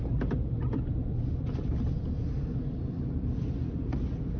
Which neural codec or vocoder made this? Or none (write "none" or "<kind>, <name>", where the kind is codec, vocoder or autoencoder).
none